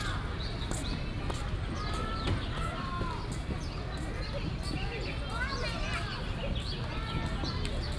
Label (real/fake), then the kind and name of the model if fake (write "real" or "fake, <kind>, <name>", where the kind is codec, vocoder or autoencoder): real